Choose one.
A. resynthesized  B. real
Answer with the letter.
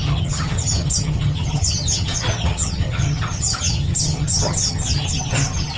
A